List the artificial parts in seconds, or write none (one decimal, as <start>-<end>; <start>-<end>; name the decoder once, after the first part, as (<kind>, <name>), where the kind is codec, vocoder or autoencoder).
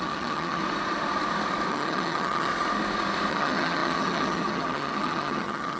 0.0-0.6 (vocoder, HiFi-GAN); 1.7-2.5; 3.3-5.8